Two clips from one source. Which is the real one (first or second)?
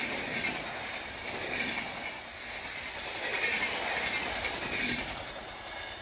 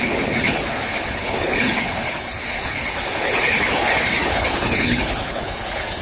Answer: first